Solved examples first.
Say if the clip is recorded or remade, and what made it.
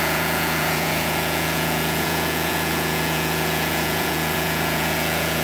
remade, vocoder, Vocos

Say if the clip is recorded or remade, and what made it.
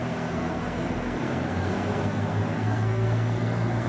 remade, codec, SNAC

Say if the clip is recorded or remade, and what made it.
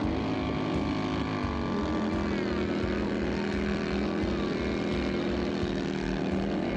recorded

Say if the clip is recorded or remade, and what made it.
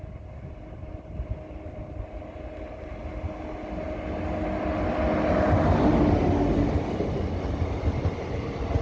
recorded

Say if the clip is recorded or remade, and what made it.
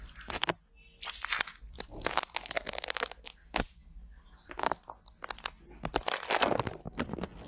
recorded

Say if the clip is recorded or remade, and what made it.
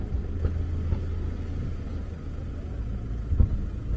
recorded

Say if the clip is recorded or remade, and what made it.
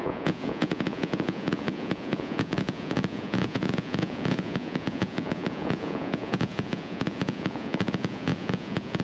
remade, vocoder, Vocos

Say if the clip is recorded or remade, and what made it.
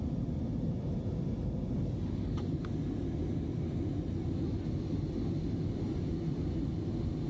recorded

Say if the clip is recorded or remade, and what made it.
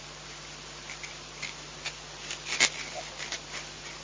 remade, vocoder, BigVGAN v2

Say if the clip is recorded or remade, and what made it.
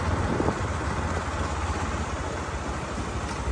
recorded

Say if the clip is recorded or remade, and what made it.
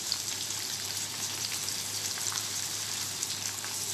remade, vocoder, BigVGAN v2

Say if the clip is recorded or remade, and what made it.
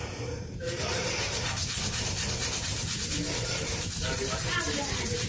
remade, vocoder, BigVGAN v2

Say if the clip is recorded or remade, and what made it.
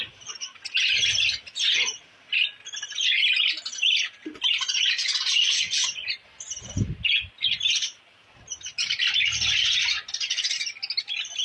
recorded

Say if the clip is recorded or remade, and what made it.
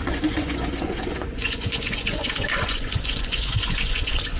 remade, vocoder, Vocos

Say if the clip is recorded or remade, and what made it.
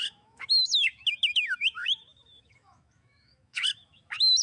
remade, autoencoder, DAC-VAE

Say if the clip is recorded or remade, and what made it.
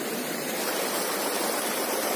remade, vocoder, BigVGAN v2